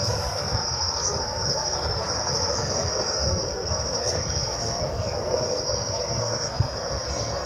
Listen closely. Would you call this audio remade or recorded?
remade